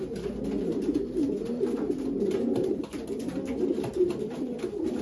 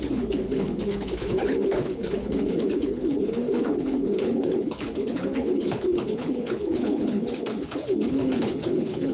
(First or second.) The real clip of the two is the first